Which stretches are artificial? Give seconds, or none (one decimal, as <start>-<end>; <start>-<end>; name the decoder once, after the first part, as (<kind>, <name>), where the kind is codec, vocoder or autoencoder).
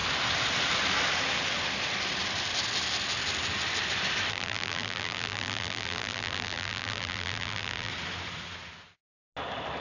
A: 4.3-7.9 (vocoder, BigVGAN v2)